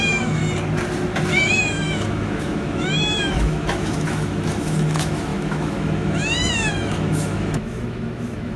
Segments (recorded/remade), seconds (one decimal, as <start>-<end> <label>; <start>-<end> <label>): 0.0-0.4 remade; 0.4-1.3 recorded; 1.3-8.6 remade